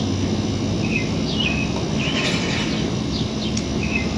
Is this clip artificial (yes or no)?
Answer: no